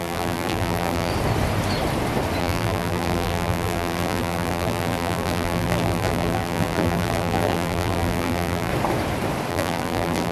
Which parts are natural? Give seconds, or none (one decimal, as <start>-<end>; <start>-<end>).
1.1-2.4; 8.7-9.5